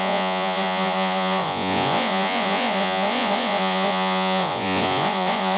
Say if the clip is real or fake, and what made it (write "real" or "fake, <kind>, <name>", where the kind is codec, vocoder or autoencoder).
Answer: fake, vocoder, Vocos